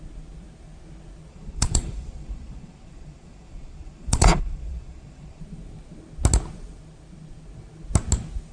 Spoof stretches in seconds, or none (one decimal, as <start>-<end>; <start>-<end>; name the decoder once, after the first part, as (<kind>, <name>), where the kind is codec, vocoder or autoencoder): 1.3-5.4 (vocoder, Vocos)